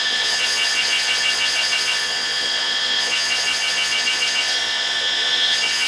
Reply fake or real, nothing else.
fake